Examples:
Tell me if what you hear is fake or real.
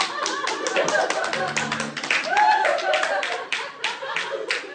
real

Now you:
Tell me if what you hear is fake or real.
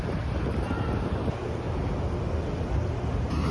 real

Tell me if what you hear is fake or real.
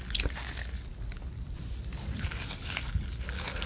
real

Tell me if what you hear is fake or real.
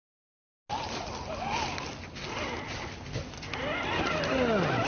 real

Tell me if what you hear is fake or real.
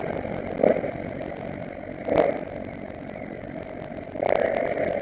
real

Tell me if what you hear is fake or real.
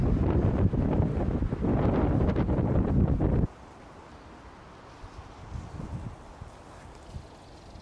real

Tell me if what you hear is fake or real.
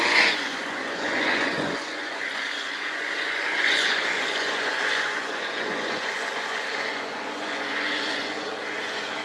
fake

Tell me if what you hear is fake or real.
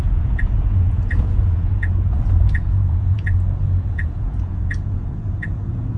fake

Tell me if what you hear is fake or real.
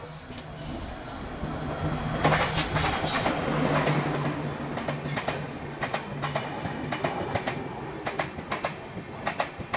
real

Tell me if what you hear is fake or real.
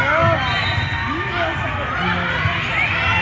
real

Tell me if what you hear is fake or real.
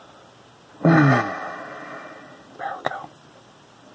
real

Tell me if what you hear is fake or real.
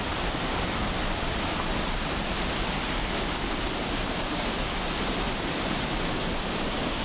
real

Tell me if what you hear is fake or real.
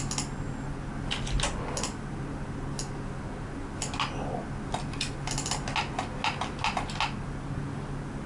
real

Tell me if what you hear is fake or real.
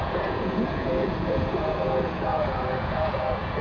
fake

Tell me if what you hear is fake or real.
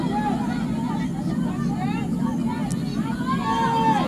real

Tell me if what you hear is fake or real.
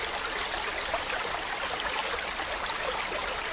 real